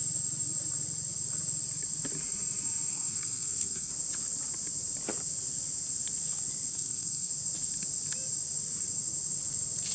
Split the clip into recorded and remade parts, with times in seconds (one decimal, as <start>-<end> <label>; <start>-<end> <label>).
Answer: 0.0-2.9 recorded; 2.9-3.9 remade; 3.9-6.7 recorded; 6.7-7.3 remade; 7.3-9.9 recorded